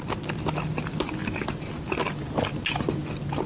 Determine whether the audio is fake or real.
real